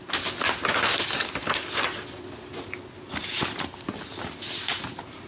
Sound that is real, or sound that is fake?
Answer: real